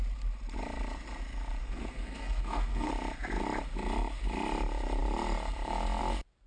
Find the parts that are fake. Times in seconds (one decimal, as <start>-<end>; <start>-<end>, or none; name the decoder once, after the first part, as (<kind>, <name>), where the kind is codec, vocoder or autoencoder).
1.6-2.9 (codec, SNAC)